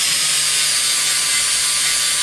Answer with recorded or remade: recorded